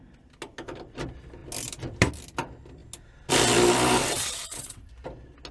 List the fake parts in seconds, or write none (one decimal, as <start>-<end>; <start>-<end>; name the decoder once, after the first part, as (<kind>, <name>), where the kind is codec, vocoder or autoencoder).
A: 4.0-4.9 (vocoder, WaveNeXt)